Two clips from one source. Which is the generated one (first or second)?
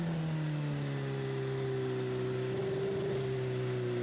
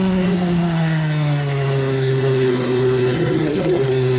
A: second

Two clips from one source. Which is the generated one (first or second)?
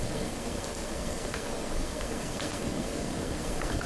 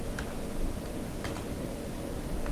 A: first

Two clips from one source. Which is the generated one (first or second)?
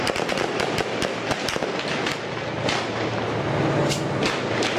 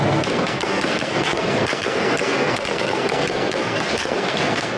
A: second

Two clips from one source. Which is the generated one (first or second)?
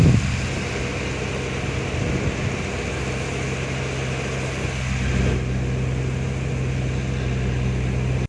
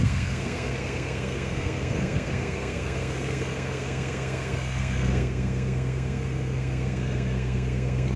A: second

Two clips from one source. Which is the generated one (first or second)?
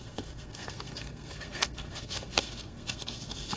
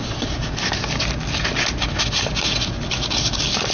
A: first